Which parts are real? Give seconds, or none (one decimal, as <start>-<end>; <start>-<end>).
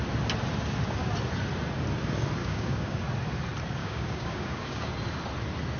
0.0-2.4; 3.0-3.8; 4.9-5.8